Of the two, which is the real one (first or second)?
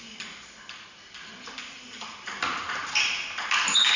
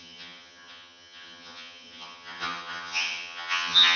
first